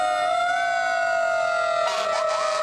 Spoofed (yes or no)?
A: no